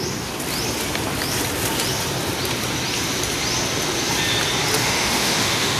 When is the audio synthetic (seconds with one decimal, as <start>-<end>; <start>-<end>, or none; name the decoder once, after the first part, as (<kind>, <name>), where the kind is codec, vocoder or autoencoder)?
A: 4.8-5.8 (autoencoder, DAC-VAE)